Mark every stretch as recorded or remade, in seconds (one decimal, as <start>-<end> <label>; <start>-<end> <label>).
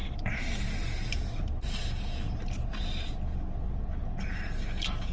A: 0.0-3.1 remade; 3.1-4.0 recorded; 4.0-4.6 remade; 4.6-5.1 recorded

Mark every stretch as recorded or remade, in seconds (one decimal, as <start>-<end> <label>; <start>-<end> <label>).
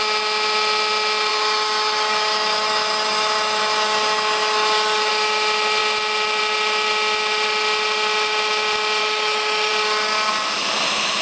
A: 0.0-1.3 recorded; 1.3-5.1 remade; 5.1-9.0 recorded; 9.0-9.7 remade; 9.7-11.2 recorded